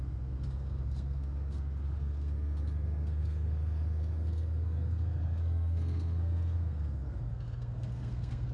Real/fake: fake